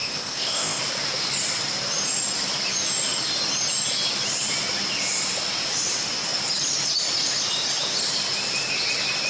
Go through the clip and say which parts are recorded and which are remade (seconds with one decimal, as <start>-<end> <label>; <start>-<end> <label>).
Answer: 0.0-0.8 remade; 0.8-9.3 recorded